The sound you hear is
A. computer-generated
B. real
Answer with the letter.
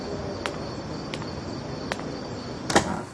B